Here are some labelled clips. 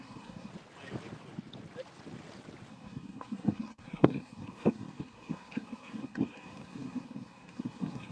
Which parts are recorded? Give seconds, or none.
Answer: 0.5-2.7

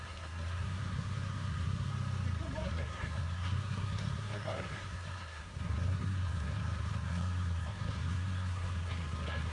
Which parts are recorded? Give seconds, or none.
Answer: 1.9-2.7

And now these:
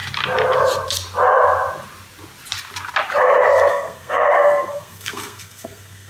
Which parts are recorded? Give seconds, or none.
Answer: 0.0-3.7

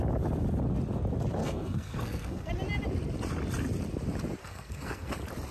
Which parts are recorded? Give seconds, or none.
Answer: 0.0-1.4; 2.5-4.4; 5.1-5.5

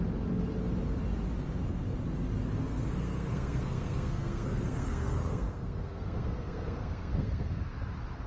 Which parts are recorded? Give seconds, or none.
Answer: 0.0-2.6; 7.6-8.3